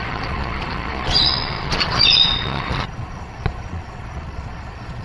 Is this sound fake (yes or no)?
yes